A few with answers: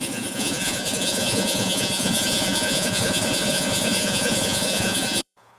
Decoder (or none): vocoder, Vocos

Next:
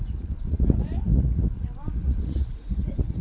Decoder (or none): vocoder, Vocos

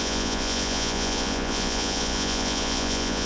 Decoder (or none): vocoder, Vocos